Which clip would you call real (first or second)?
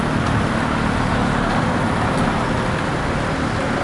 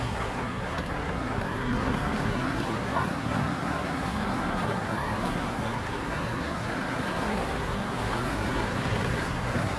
first